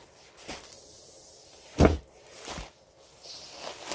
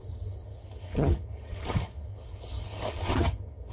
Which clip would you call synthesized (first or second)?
second